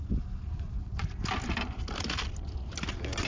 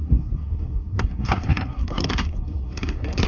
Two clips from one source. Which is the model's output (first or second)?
second